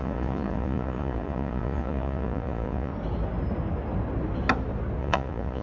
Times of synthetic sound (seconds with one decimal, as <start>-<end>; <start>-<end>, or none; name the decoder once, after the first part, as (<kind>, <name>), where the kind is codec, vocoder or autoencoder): 0.0-2.9 (vocoder, Vocos); 5.0-5.6